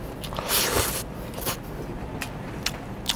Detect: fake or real real